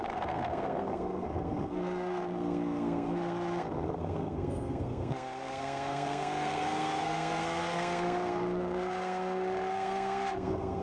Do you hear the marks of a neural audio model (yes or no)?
yes